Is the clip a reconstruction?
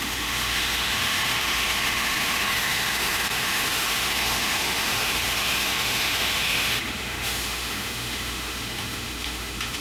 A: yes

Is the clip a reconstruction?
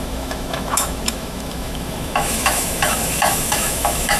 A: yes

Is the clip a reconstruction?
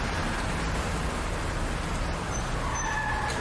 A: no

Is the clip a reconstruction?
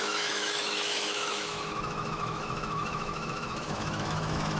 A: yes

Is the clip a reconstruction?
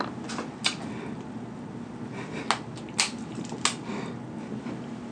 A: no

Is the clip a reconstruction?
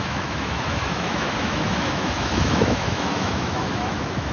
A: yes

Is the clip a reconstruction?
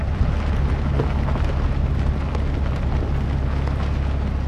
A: no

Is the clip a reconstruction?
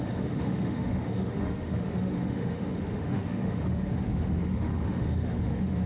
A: yes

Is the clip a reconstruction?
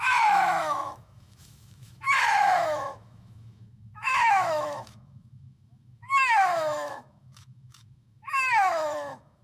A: yes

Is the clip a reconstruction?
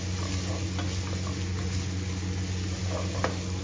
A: no